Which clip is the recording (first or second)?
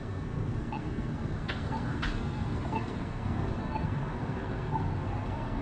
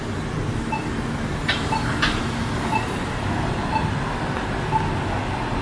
second